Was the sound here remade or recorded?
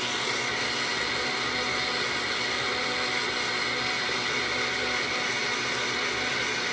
recorded